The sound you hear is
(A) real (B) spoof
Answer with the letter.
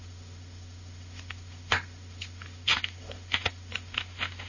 B